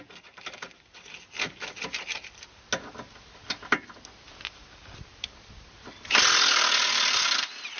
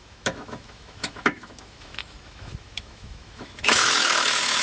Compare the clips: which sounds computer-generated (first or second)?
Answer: second